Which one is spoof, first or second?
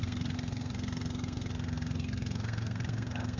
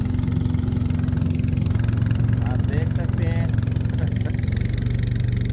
first